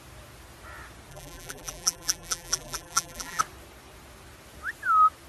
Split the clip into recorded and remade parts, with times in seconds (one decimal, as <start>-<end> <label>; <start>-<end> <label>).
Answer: 0.0-1.1 recorded; 1.1-3.4 remade; 3.4-5.3 recorded

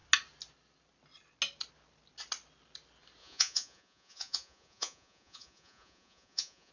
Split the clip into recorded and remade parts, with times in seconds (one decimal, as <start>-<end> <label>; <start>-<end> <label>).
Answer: 0.0-3.2 recorded; 3.2-6.7 remade

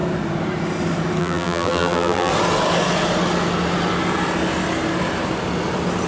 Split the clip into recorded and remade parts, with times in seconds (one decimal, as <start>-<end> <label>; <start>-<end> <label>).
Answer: 0.0-1.2 recorded; 1.2-2.3 remade; 2.3-6.1 recorded

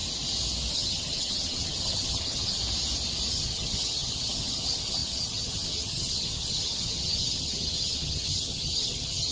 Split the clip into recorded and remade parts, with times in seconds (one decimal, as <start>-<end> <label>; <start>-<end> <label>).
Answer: 0.0-0.7 recorded; 0.7-2.6 remade; 2.6-3.3 recorded; 3.3-9.3 remade

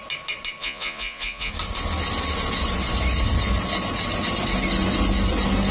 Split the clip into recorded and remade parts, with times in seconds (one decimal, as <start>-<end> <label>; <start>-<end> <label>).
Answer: 0.0-0.6 recorded; 0.6-1.5 remade; 1.5-5.7 recorded

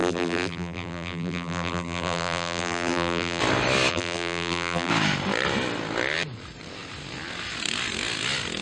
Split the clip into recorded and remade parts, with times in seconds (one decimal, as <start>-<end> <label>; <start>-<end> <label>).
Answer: 0.0-3.4 remade; 3.4-3.9 recorded; 3.9-4.9 remade; 4.9-8.6 recorded

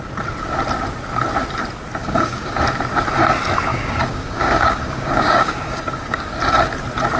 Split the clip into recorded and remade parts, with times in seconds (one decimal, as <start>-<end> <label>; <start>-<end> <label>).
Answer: 0.0-2.0 recorded; 2.0-2.6 remade; 2.6-3.7 recorded; 3.7-6.3 remade; 6.3-7.2 recorded

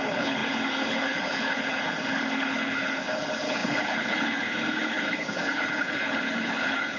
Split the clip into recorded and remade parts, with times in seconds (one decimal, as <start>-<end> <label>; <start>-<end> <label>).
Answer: 0.0-7.0 remade